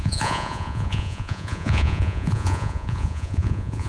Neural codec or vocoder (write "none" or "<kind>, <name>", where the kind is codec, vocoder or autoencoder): vocoder, Vocos